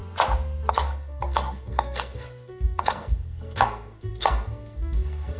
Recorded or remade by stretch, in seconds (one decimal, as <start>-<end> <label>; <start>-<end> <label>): 0.0-0.7 recorded; 0.7-5.4 remade